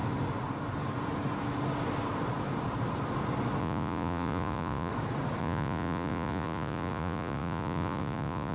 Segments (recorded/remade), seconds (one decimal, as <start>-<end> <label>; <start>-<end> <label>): 0.0-3.6 recorded; 3.6-4.9 remade; 4.9-5.4 recorded; 5.4-8.5 remade